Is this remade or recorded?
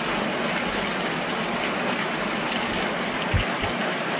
recorded